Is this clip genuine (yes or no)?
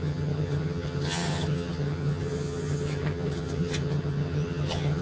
no